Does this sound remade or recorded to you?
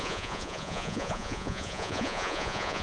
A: remade